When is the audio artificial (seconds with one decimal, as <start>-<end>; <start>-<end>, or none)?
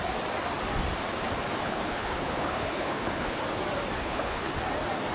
1.6-3.4; 4.0-4.5